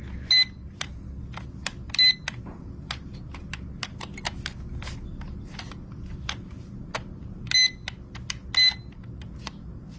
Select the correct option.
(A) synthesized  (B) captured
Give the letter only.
B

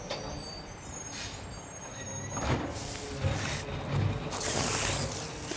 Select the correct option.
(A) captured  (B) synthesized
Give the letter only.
A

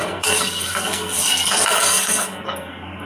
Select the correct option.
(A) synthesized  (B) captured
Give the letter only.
A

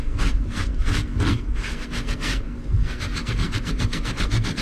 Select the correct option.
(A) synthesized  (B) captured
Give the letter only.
A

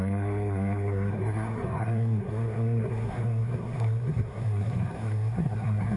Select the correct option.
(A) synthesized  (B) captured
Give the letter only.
A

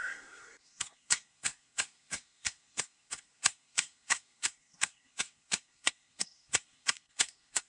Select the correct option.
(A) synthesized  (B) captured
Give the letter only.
A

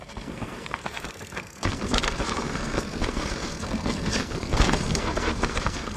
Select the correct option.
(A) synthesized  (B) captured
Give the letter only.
A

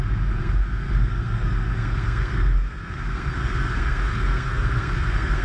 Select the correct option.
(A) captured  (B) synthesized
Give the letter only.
B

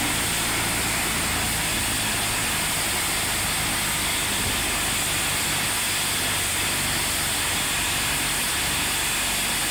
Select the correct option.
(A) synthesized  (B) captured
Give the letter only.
B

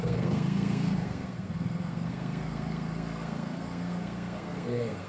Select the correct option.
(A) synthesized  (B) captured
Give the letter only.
A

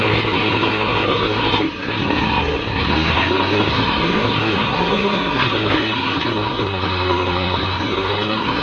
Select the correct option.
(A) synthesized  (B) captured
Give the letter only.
A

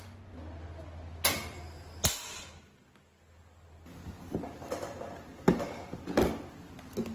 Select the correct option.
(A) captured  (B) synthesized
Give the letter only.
A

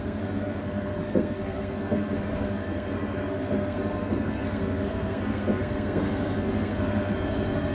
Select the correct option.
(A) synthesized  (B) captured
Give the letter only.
A